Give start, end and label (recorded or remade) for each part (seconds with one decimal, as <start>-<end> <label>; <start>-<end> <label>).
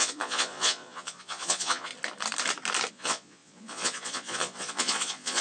0.0-1.9 remade; 1.9-2.9 recorded; 2.9-5.4 remade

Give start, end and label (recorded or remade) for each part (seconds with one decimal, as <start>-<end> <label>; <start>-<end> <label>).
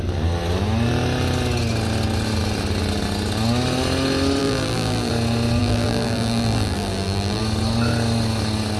0.0-4.4 recorded; 4.4-5.1 remade; 5.1-5.6 recorded; 5.6-7.4 remade; 7.4-8.8 recorded